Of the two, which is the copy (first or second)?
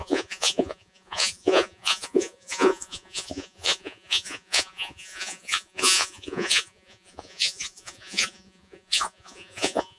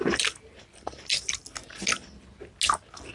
first